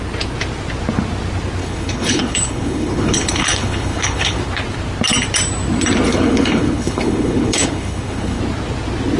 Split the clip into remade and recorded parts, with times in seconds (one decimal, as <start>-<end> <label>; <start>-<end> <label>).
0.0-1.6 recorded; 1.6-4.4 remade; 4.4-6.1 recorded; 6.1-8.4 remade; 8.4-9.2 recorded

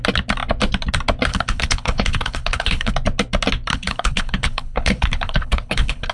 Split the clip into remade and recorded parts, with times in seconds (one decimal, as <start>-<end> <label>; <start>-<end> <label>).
0.0-1.3 recorded; 1.3-2.9 remade; 2.9-3.7 recorded; 3.7-6.1 remade

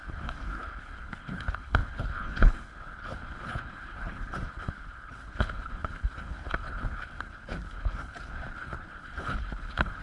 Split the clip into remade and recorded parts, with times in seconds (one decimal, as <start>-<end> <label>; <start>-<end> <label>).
0.0-10.0 remade

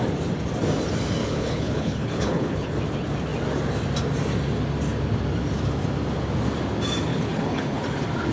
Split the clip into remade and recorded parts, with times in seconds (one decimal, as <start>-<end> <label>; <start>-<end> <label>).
0.0-1.2 recorded; 1.2-2.7 remade; 2.7-7.1 recorded; 7.1-7.8 remade; 7.8-8.3 recorded

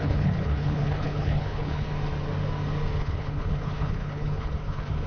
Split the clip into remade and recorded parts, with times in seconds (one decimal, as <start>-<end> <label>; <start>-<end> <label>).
0.0-1.9 remade; 1.9-3.0 recorded; 3.0-5.1 remade